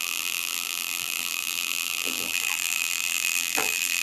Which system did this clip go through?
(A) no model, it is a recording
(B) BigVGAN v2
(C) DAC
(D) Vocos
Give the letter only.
B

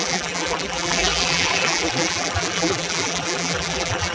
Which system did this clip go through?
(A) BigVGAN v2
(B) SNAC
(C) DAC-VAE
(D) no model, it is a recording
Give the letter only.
A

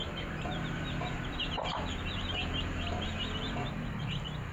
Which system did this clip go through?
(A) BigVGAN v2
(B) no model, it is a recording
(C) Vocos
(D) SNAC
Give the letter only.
A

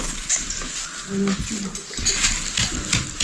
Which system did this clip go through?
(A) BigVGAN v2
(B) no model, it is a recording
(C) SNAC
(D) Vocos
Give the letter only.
B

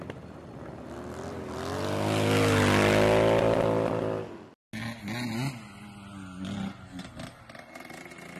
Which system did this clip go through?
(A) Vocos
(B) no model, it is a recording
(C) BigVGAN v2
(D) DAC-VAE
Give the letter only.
B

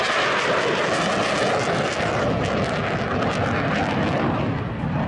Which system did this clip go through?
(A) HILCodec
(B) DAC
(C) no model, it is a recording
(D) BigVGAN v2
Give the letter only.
C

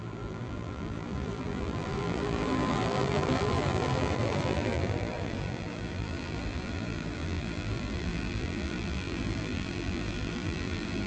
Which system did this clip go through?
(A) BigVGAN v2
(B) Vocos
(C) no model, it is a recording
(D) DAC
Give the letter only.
A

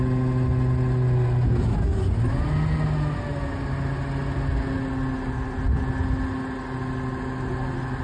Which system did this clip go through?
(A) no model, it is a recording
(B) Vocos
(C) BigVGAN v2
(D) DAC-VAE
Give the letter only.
A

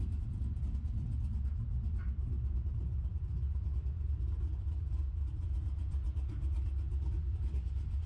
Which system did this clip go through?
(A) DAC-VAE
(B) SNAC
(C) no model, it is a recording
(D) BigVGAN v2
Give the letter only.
D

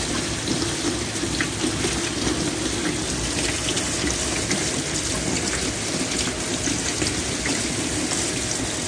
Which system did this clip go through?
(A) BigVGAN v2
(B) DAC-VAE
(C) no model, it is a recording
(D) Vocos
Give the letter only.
C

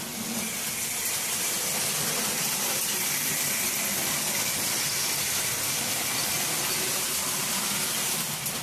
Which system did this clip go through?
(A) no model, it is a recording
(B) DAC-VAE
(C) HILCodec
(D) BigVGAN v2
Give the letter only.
A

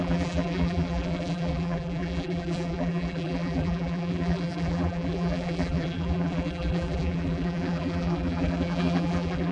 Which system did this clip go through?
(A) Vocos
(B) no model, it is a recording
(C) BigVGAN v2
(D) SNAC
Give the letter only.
C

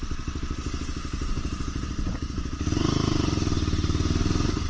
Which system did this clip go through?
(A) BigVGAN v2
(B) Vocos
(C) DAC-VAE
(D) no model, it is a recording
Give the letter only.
D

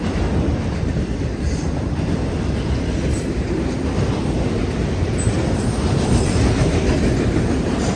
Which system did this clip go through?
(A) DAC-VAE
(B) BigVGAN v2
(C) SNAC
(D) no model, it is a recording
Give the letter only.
B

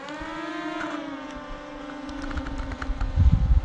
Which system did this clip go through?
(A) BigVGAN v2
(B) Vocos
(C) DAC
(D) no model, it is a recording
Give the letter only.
A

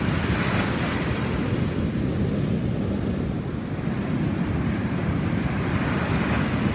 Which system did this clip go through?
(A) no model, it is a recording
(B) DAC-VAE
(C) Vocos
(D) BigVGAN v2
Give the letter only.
D